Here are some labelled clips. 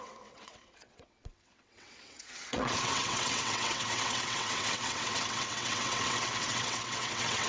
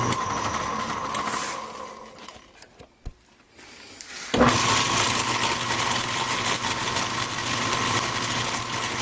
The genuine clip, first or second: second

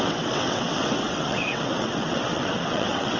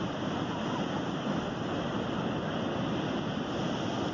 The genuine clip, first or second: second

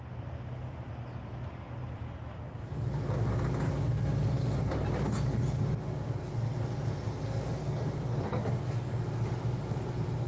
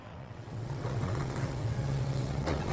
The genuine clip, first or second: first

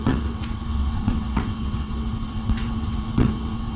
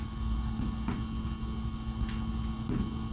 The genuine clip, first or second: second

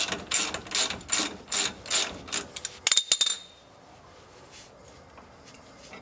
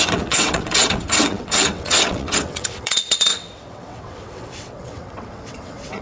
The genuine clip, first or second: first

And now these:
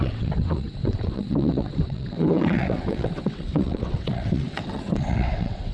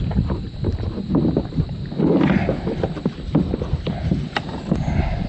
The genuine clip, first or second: second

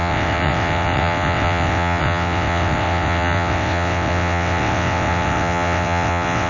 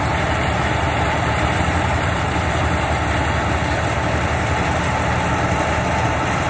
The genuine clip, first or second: second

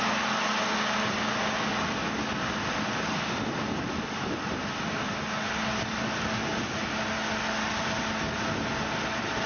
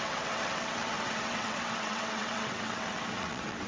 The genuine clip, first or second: first